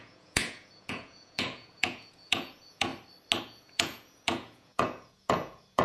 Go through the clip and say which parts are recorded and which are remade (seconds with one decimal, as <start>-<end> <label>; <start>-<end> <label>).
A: 0.0-2.9 remade; 2.9-3.4 recorded; 3.4-5.8 remade